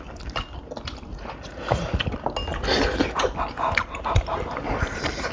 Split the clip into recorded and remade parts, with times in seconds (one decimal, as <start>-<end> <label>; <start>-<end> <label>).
0.0-1.1 recorded; 1.1-2.0 remade; 2.0-5.3 recorded